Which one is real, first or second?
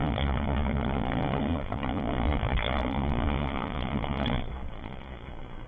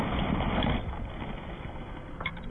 second